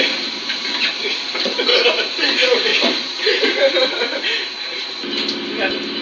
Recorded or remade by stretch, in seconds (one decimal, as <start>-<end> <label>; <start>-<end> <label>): 0.0-1.7 recorded; 1.7-2.2 remade; 2.2-2.7 recorded; 2.7-4.9 remade; 4.9-6.0 recorded